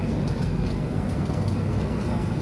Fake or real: fake